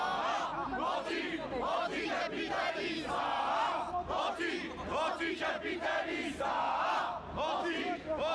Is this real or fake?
real